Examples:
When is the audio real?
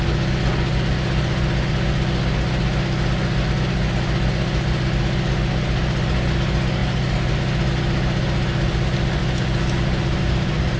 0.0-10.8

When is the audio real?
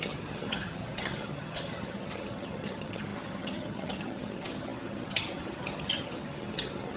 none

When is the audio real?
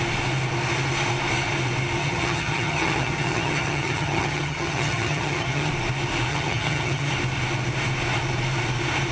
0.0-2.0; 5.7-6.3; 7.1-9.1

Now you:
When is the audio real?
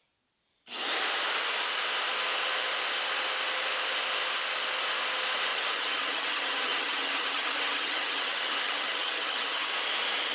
0.0-5.5; 9.7-10.3